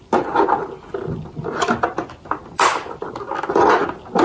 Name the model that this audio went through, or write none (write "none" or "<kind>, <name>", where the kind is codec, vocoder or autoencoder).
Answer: none